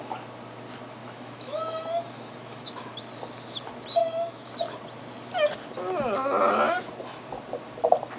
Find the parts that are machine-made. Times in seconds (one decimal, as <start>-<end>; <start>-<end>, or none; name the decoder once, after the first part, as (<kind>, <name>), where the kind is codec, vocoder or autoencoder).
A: 1.0-3.0 (autoencoder, DAC-VAE); 4.0-4.5